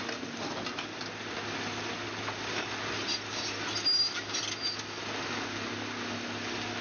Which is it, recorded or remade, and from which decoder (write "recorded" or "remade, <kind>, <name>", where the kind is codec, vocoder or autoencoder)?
recorded